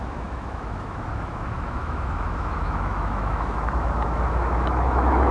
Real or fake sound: fake